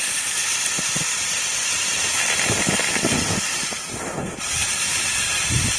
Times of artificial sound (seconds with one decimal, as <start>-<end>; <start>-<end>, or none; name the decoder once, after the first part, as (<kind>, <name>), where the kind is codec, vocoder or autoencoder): none